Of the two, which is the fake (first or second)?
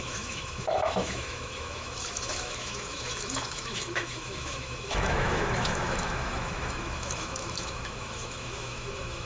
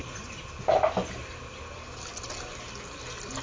first